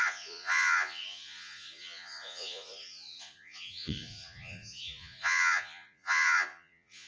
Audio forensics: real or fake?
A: fake